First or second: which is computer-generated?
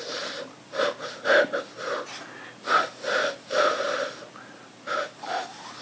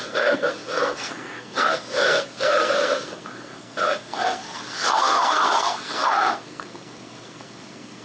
second